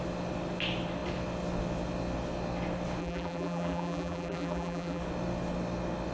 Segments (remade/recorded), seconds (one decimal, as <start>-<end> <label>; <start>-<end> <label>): 0.0-3.0 recorded; 3.0-5.0 remade; 5.0-6.1 recorded